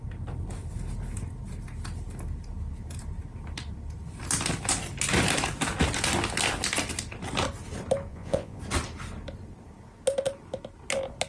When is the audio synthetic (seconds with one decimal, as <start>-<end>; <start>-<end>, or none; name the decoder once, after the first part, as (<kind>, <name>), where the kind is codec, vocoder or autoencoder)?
8.1-8.6 (vocoder, Vocos)